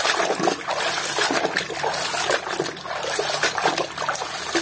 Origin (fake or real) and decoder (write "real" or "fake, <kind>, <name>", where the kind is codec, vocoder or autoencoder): real